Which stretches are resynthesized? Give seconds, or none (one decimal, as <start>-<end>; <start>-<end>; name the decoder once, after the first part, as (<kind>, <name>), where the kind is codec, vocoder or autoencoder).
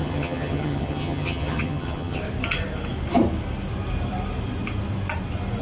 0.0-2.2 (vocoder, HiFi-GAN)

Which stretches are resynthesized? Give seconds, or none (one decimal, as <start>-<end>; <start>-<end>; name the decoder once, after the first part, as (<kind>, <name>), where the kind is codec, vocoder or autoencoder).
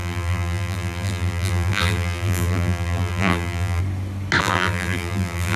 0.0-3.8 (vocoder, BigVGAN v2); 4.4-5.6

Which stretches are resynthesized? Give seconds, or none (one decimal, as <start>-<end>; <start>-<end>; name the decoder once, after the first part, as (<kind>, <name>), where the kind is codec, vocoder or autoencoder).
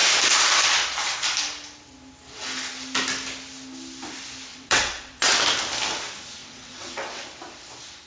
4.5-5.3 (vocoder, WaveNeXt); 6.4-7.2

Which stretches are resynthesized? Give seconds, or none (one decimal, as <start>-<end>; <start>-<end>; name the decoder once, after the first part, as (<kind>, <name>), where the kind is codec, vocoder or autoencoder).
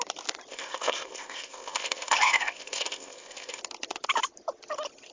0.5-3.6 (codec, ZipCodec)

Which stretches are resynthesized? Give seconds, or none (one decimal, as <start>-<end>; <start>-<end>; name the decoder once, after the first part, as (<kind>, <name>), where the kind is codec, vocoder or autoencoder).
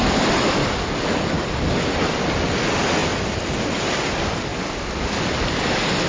none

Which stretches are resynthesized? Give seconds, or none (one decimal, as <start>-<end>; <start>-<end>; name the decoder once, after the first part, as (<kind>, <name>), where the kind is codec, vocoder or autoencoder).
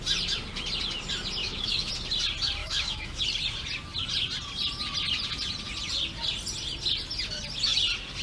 1.4-1.9 (autoencoder, DAC-VAE); 2.6-3.2